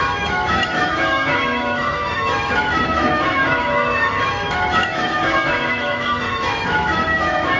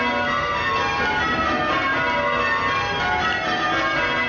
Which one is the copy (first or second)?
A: first